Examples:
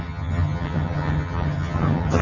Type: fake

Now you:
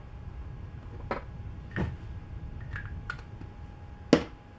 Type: real